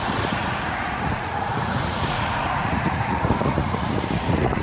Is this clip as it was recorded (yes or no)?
no